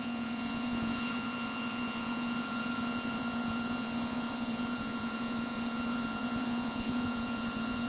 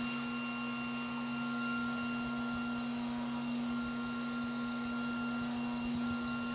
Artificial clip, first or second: first